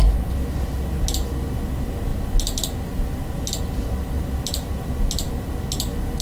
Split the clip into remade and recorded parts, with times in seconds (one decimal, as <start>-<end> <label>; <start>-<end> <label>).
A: 0.0-6.2 recorded